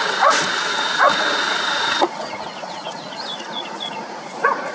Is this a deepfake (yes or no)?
yes